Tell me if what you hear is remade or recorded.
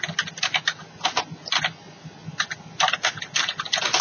recorded